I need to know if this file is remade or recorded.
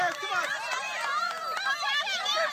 remade